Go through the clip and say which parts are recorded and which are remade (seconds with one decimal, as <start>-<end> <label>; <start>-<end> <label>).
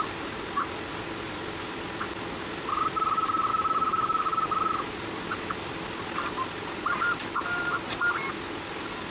0.0-3.5 recorded; 3.5-4.9 remade; 4.9-9.1 recorded